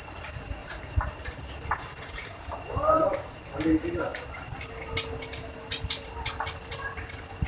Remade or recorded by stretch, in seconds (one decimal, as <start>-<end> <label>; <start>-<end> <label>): 0.0-0.6 recorded; 0.6-3.4 remade; 3.4-7.5 recorded